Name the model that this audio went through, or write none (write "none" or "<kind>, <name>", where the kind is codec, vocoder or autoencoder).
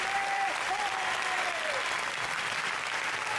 vocoder, BigVGAN v2